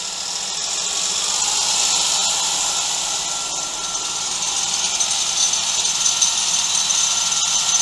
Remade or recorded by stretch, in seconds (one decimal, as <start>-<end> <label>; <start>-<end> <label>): 0.0-7.8 recorded